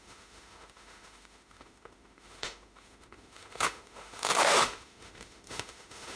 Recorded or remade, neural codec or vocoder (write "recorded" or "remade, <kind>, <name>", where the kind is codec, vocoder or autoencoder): remade, autoencoder, DAC-VAE